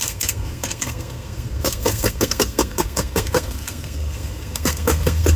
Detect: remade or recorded remade